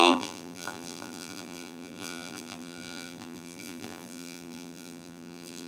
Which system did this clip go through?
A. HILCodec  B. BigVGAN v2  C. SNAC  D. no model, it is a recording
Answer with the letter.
B